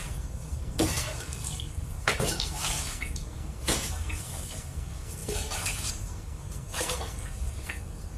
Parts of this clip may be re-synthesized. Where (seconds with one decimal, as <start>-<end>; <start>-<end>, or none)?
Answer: 0.0-8.2